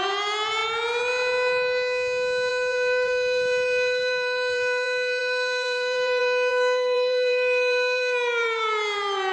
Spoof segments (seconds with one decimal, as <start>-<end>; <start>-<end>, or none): 0.0-0.6; 2.5-9.3